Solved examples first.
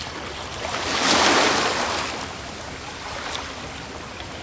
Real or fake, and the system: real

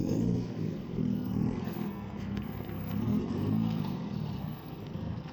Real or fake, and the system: fake, codec, SNAC